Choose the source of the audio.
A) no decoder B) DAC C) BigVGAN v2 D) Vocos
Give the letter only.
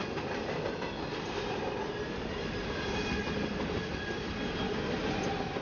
A